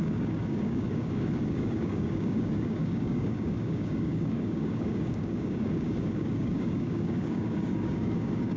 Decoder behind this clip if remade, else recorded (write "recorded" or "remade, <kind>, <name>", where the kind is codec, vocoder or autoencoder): remade, codec, DAC